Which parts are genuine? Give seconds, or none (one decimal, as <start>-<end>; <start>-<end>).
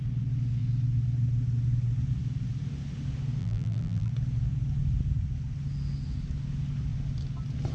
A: 0.0-3.4; 4.1-7.7